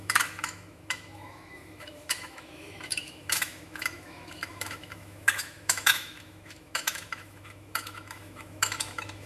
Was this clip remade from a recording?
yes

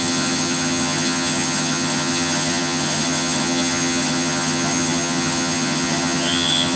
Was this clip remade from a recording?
yes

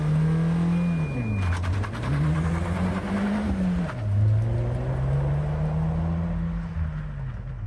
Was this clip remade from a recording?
no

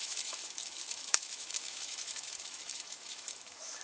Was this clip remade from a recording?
yes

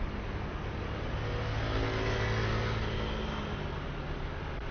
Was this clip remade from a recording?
no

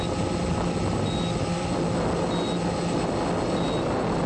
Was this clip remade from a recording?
no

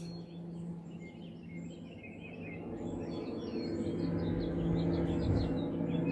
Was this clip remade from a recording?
no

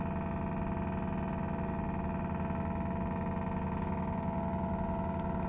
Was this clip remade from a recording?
no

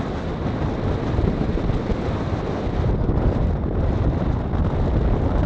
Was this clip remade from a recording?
no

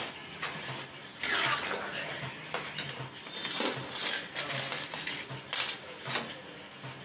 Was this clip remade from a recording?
no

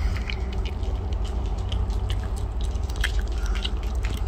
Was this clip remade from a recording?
no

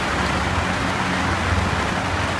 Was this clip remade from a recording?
no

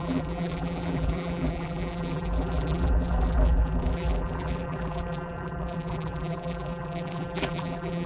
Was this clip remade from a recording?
yes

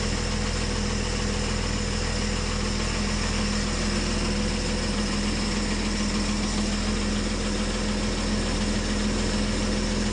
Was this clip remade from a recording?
no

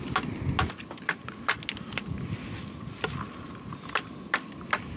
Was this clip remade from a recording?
no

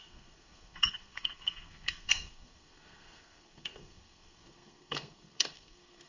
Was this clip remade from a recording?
yes